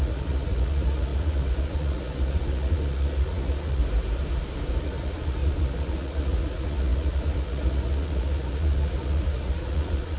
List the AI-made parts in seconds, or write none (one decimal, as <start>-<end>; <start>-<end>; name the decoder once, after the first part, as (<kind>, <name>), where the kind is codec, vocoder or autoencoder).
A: 0.0-3.8 (vocoder, Vocos); 4.8-10.2